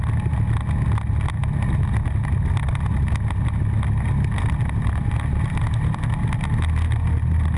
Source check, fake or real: real